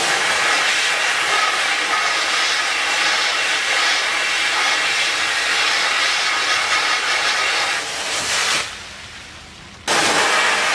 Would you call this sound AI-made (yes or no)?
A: no